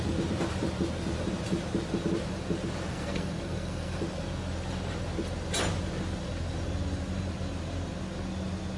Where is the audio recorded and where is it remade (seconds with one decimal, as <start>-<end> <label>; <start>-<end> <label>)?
0.0-2.9 recorded; 2.9-4.0 remade; 4.0-8.8 recorded